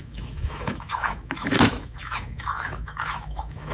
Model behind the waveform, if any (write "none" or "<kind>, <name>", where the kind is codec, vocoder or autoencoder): autoencoder, DAC-VAE